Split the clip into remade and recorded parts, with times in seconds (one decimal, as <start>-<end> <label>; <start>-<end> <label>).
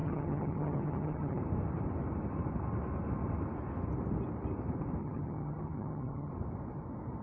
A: 0.0-1.4 remade; 1.4-5.0 recorded; 5.0-6.3 remade; 6.3-7.2 recorded